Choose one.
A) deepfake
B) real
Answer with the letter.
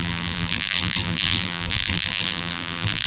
A